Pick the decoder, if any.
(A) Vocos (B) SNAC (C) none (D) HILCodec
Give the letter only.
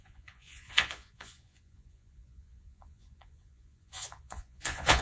A